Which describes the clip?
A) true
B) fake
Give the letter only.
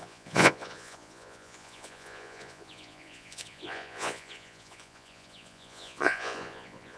B